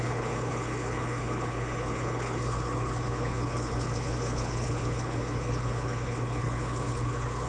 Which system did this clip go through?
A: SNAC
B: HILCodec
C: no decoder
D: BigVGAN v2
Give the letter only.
B